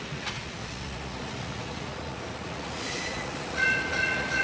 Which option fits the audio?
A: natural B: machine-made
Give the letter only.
B